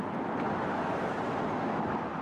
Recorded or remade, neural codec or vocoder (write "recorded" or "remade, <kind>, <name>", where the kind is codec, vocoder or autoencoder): recorded